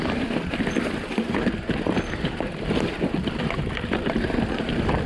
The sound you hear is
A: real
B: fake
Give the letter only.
B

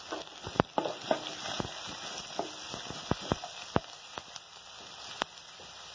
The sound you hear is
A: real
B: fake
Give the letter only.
A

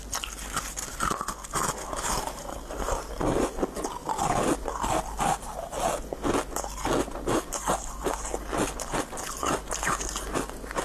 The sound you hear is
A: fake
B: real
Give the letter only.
B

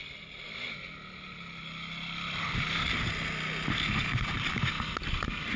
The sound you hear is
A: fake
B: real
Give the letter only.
B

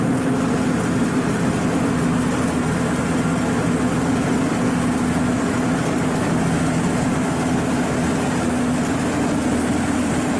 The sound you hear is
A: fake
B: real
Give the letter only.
B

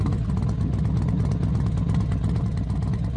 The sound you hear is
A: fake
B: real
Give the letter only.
B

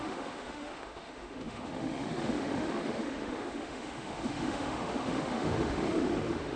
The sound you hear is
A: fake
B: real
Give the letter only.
A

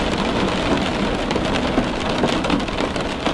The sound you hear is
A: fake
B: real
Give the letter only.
B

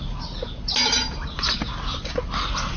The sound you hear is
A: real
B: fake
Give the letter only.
A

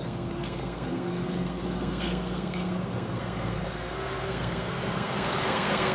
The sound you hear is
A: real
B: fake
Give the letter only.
B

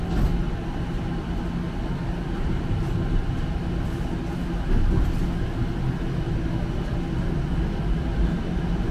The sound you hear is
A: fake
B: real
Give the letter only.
B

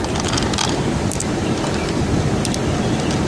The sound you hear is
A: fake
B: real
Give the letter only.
B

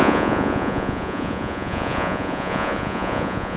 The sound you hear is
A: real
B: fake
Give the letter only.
B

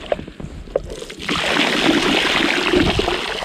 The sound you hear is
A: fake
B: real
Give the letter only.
B